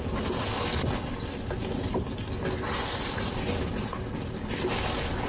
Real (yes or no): yes